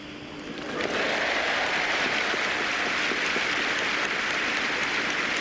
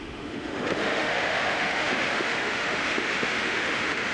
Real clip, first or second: first